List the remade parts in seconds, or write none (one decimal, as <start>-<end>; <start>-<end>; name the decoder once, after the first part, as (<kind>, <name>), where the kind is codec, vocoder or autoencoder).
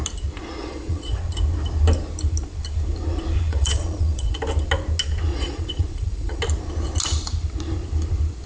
0.6-1.2 (vocoder, Vocos); 3.5-4.4; 5.3-6.4